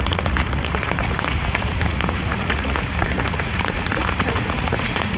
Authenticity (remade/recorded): remade